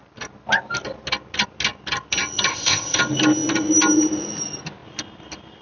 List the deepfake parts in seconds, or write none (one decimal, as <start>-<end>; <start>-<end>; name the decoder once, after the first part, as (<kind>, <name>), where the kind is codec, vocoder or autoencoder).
2.5-3.0 (codec, ZipCodec)